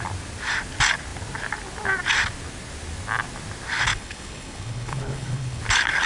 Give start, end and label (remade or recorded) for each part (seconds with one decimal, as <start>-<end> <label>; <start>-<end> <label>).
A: 0.0-3.9 recorded; 3.9-5.6 remade; 5.6-6.1 recorded